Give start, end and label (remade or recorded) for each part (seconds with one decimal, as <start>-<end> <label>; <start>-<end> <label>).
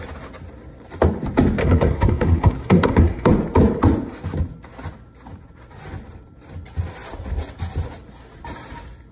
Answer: 0.0-1.6 recorded; 1.6-3.3 remade; 3.3-9.1 recorded